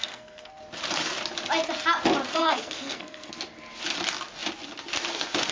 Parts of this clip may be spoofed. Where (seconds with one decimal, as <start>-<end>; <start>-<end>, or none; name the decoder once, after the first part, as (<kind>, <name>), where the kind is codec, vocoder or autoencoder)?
0.0-0.6 (codec, SNAC); 2.3-3.3